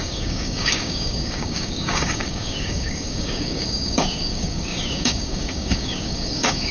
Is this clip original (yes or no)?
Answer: no